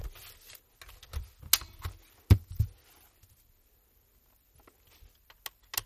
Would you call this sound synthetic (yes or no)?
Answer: no